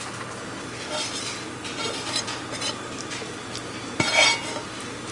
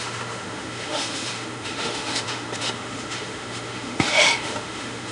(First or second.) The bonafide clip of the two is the first